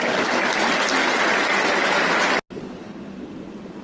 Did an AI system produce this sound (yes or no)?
no